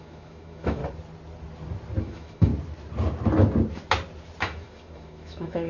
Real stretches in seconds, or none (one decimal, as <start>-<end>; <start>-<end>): 0.8-2.0; 2.5-4.4